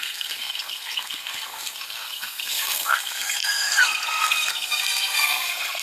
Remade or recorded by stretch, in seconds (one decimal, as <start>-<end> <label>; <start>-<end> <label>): 0.0-5.8 remade